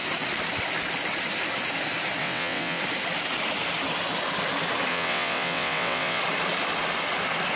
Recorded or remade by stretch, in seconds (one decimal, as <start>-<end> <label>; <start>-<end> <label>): 0.0-2.2 recorded; 2.2-2.8 remade; 2.8-4.9 recorded; 4.9-6.2 remade; 6.2-7.6 recorded